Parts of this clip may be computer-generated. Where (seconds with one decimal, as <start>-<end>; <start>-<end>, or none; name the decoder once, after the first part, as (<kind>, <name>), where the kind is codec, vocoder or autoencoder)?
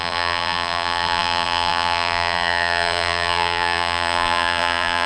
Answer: 0.0-5.1 (vocoder, BigVGAN v2)